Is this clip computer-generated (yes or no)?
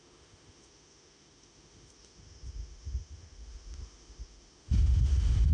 yes